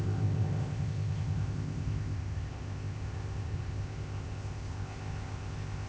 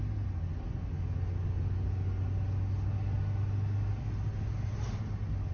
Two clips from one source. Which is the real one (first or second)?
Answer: second